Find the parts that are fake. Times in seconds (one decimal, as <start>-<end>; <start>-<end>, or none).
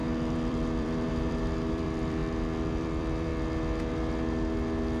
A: 0.0-2.2; 2.8-3.3